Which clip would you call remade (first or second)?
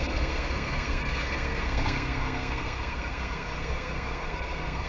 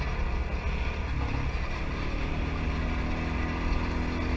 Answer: first